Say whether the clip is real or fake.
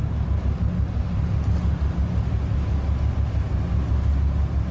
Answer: real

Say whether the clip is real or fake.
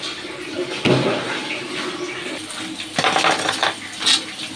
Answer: real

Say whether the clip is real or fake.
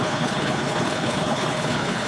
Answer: fake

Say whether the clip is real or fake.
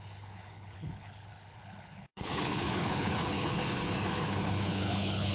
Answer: fake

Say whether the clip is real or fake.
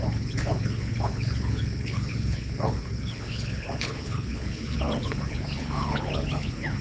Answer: fake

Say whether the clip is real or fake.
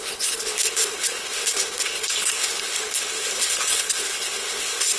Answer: fake